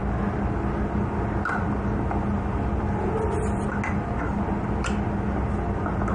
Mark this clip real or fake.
real